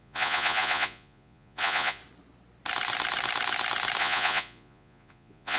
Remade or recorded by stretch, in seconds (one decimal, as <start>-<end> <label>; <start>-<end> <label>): 0.0-2.0 remade; 2.0-4.0 recorded; 4.0-5.6 remade

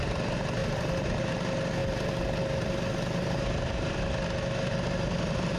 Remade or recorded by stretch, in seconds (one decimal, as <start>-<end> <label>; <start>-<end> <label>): 0.0-5.6 recorded

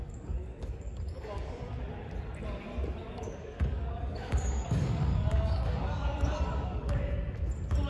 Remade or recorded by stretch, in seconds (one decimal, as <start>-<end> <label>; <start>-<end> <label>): 0.0-1.6 remade; 1.6-3.0 recorded; 3.0-7.1 remade; 7.1-7.9 recorded

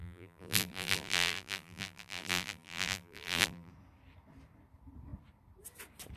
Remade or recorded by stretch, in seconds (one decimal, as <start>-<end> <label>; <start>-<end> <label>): 0.0-3.7 remade; 3.7-6.2 recorded

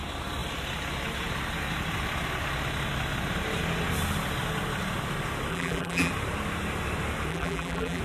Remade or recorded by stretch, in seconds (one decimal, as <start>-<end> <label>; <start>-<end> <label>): 0.0-5.5 recorded; 5.5-6.1 remade; 6.1-7.3 recorded; 7.3-8.0 remade

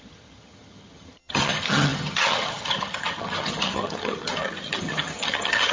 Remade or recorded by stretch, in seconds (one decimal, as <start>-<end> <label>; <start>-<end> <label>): 0.0-5.7 remade

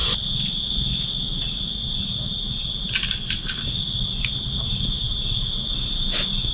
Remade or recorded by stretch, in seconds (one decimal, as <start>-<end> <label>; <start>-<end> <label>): 0.0-6.5 recorded

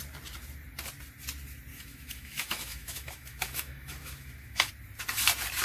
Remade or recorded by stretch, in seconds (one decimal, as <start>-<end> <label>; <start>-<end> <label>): 0.0-1.7 recorded; 1.7-4.7 remade; 4.7-5.6 recorded